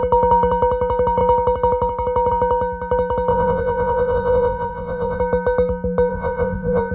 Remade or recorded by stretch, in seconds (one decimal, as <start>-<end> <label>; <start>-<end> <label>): 0.0-3.3 recorded; 3.3-5.2 remade; 5.2-6.1 recorded; 6.1-6.9 remade